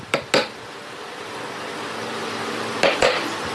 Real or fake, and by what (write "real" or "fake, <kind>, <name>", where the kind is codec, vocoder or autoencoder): real